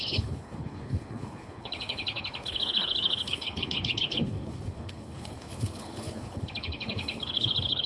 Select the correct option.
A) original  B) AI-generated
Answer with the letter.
B